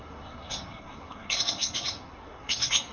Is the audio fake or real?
fake